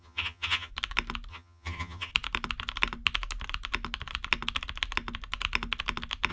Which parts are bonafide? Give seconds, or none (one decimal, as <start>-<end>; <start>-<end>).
0.7-1.3; 2.1-6.3

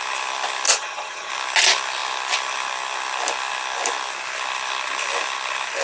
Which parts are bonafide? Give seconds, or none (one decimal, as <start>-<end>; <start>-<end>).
0.0-0.7; 1.3-5.8

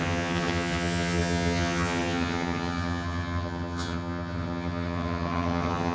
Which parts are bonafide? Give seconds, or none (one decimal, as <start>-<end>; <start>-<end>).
none

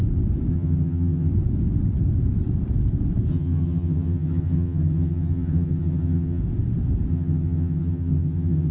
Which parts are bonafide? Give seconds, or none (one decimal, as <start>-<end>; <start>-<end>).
0.0-0.5; 1.3-3.3; 6.4-7.1

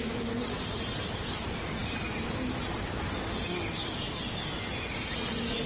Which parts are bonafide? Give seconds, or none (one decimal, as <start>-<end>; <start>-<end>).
0.0-5.7

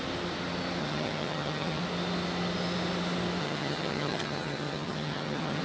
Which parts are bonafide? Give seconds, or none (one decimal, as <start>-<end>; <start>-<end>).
0.0-0.8; 1.8-3.4